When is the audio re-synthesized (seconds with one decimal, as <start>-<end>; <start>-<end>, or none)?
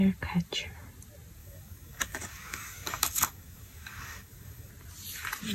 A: 1.4-4.7